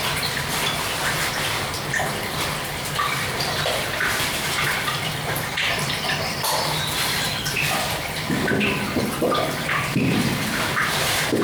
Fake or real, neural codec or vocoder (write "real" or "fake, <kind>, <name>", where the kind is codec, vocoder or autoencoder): fake, vocoder, BigVGAN v2